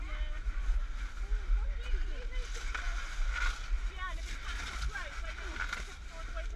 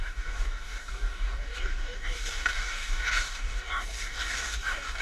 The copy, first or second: second